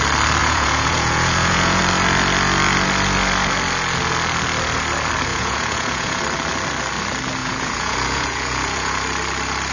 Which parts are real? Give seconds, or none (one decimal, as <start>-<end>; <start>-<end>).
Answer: 0.0-0.4; 1.8-5.3; 6.2-7.4; 9.0-9.7